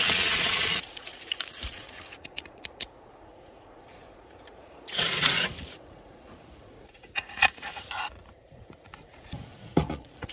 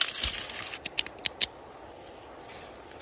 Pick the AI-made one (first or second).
first